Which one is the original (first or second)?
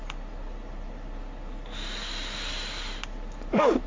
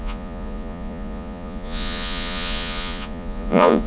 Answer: first